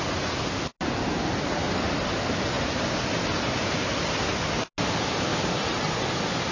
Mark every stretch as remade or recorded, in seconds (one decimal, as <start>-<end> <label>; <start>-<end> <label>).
0.0-6.5 recorded